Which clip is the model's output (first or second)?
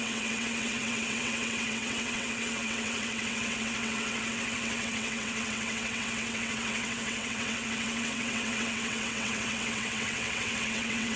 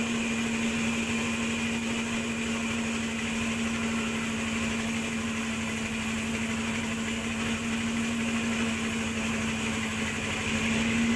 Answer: first